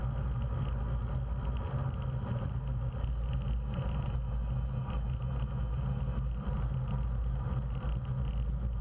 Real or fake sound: real